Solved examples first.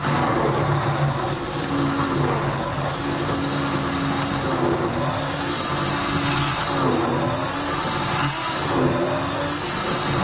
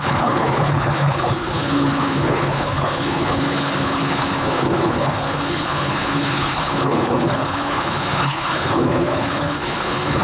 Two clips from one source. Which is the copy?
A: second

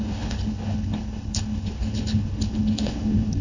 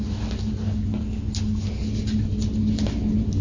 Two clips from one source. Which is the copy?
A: first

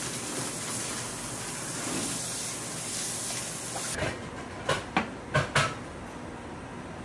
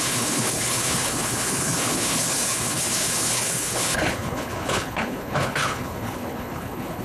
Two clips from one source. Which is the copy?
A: second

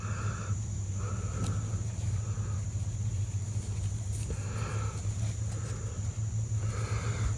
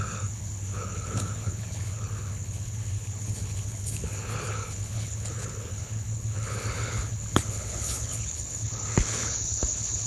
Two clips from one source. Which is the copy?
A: second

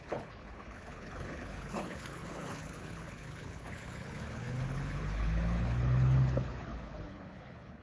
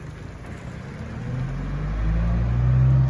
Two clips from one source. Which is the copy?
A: first